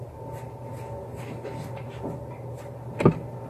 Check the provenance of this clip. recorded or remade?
recorded